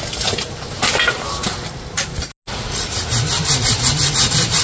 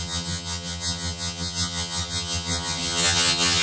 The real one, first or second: first